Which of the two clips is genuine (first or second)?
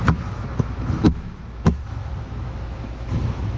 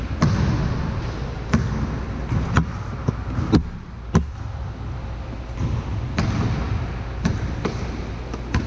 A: second